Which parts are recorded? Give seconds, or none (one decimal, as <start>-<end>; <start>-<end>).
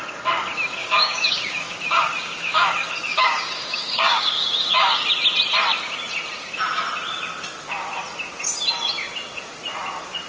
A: 0.0-0.8; 5.1-10.3